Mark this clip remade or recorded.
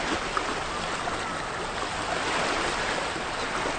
recorded